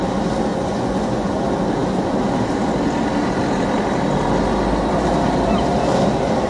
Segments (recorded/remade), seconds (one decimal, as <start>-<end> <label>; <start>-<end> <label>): 0.0-0.5 recorded; 0.5-1.4 remade; 1.4-6.5 recorded